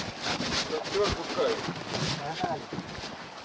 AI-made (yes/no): no